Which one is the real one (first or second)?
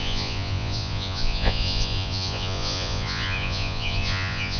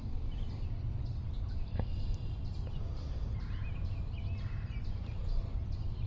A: second